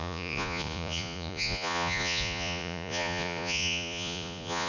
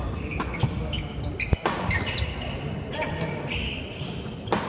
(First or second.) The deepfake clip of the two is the first